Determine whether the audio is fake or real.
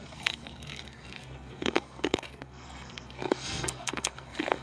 fake